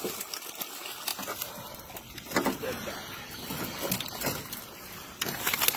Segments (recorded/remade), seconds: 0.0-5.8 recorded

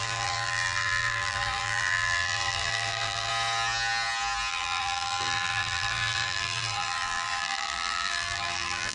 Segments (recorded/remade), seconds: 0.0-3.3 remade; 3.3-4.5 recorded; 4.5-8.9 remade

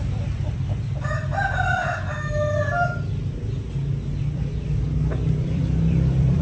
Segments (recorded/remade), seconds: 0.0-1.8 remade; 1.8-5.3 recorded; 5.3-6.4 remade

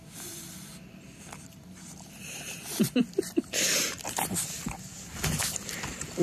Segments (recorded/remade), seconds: 0.0-3.0 remade; 3.0-5.1 recorded; 5.1-6.2 remade

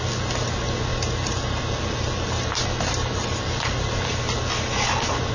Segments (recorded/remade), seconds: 0.0-0.9 recorded; 0.9-4.1 remade; 4.1-5.3 recorded